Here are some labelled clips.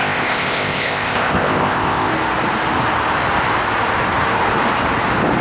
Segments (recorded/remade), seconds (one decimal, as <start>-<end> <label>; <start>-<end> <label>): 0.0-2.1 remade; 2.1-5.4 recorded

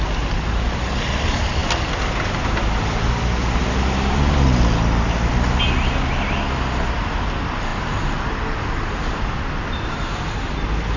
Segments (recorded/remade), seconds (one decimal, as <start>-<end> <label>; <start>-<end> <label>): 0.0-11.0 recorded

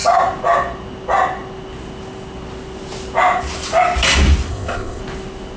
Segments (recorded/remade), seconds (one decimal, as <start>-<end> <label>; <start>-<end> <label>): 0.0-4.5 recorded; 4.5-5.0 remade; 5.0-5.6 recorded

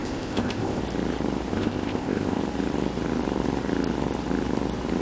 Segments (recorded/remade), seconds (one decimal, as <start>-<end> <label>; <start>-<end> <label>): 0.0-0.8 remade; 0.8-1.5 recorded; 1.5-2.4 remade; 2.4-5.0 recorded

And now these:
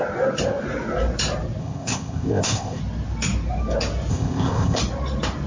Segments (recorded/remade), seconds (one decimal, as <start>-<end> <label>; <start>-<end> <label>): 0.0-1.6 recorded; 1.6-2.8 remade; 2.8-4.1 recorded; 4.1-4.8 remade; 4.8-5.5 recorded

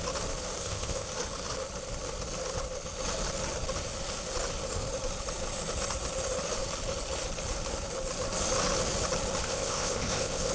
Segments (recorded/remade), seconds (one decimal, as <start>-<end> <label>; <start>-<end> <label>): 0.0-0.6 recorded; 0.6-1.1 remade; 1.1-9.4 recorded; 9.4-10.5 remade

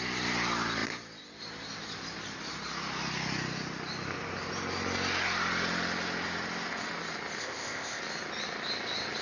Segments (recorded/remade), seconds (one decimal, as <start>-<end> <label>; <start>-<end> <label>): 0.0-7.4 recorded; 7.4-8.0 remade; 8.0-9.2 recorded